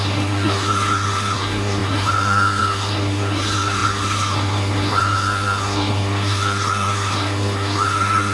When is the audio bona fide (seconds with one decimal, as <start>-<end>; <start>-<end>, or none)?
none